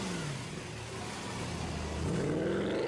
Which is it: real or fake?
real